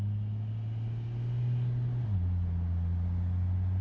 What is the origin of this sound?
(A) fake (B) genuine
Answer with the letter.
B